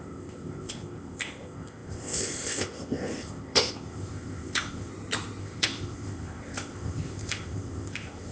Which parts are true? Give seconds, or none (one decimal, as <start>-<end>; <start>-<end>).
4.9-5.4